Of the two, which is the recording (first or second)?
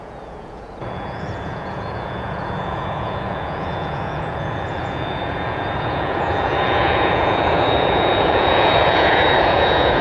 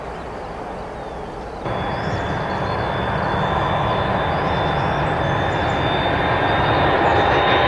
second